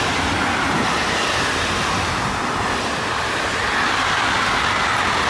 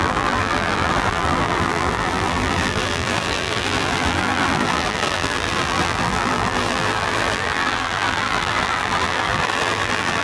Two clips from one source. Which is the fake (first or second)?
second